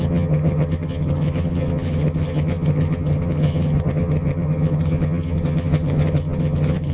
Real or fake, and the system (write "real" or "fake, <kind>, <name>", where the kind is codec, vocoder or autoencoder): fake, vocoder, HiFi-GAN